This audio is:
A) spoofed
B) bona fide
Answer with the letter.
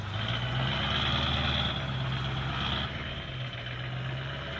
B